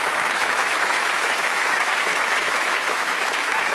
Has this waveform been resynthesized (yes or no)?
yes